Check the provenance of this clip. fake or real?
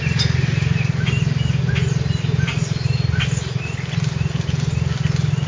real